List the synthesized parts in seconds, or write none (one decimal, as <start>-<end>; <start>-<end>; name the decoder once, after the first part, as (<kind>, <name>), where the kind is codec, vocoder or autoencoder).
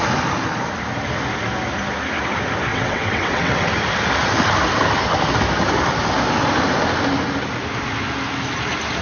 2.7-3.8 (vocoder, WaveNeXt)